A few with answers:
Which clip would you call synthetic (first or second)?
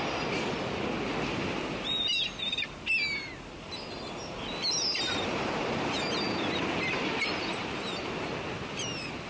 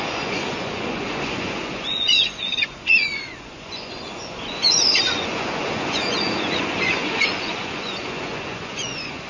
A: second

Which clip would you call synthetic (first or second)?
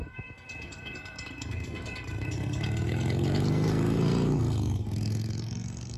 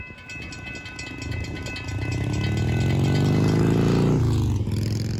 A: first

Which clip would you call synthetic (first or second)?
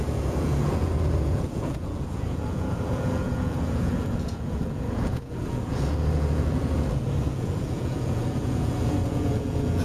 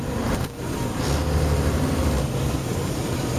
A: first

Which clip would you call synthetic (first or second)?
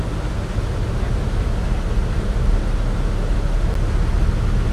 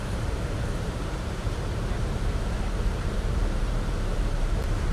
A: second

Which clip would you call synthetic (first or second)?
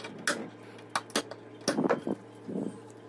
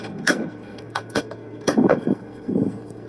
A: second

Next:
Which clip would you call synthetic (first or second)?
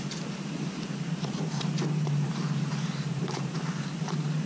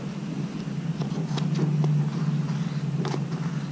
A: first